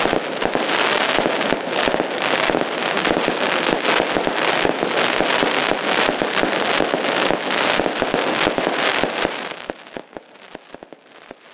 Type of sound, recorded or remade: recorded